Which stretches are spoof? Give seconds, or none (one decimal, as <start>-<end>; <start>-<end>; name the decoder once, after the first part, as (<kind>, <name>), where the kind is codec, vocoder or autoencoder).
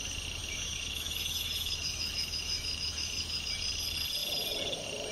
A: 0.4-3.5 (autoencoder, DAC-VAE)